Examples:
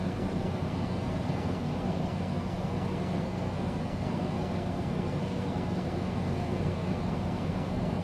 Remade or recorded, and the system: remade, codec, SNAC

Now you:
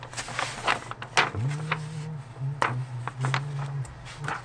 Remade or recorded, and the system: recorded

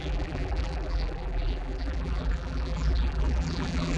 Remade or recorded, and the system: remade, vocoder, BigVGAN v2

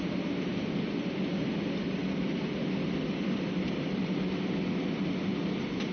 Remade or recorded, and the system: recorded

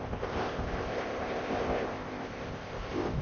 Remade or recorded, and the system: remade, codec, ZipCodec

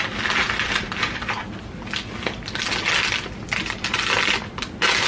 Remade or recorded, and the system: recorded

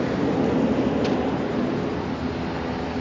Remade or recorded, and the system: recorded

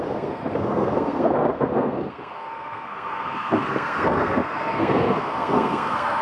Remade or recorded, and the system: remade, codec, SNAC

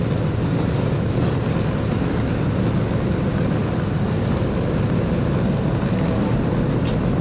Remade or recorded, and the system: recorded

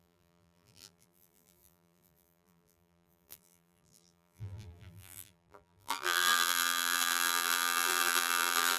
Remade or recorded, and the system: remade, vocoder, BigVGAN v2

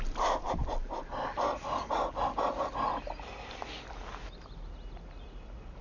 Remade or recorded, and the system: recorded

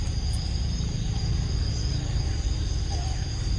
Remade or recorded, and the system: recorded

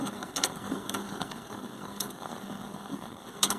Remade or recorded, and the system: remade, codec, SNAC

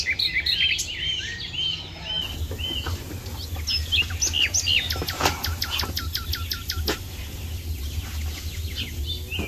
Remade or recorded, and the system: recorded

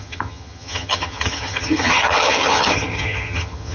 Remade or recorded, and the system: remade, vocoder, HiFi-GAN